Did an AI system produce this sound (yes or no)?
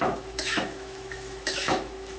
yes